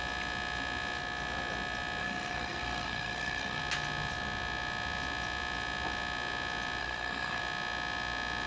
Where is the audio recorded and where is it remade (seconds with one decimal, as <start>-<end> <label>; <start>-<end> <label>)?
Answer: 0.0-2.0 recorded; 2.0-3.6 remade; 3.6-6.8 recorded; 6.8-7.4 remade; 7.4-8.5 recorded